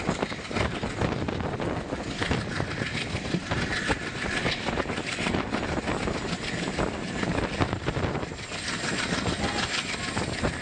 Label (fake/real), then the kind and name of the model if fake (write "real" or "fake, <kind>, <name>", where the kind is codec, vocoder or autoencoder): real